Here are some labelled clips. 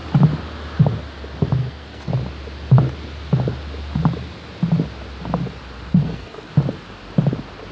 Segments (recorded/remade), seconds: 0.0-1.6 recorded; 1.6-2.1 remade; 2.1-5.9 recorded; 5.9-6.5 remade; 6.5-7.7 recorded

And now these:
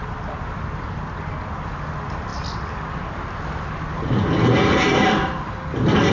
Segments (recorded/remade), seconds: 0.0-6.1 recorded

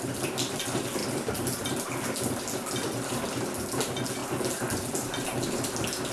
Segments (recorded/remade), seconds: 0.0-6.1 recorded

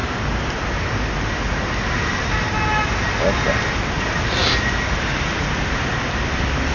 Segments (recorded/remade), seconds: 0.0-6.7 recorded